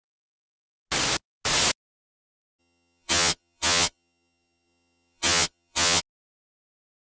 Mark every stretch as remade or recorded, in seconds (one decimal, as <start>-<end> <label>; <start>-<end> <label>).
0.0-2.6 recorded; 2.6-6.0 remade; 6.0-7.1 recorded